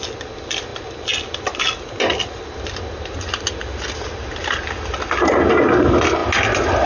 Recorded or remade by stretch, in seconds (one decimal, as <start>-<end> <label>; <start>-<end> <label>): 0.0-6.9 recorded